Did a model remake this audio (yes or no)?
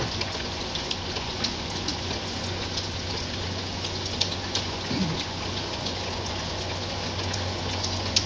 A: yes